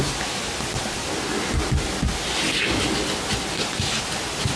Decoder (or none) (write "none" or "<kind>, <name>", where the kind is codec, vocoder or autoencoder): none